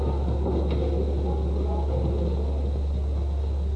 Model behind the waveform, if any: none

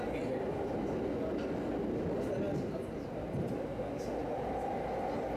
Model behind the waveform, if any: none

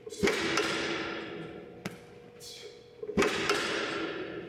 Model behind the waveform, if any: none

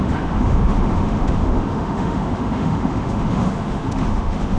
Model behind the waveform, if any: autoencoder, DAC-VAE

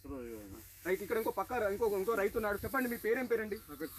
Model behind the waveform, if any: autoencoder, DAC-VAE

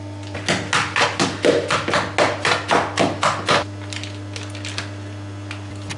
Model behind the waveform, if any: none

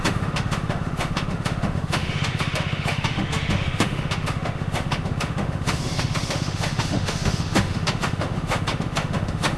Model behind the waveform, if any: autoencoder, DAC-VAE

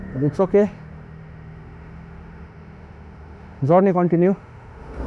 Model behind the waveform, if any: autoencoder, DAC-VAE